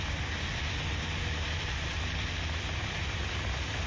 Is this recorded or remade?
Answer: recorded